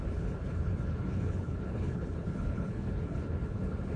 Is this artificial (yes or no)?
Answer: yes